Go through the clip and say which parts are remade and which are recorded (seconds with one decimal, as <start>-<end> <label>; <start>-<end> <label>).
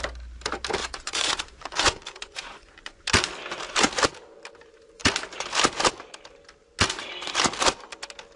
0.0-0.8 recorded; 0.8-3.0 remade; 3.0-8.4 recorded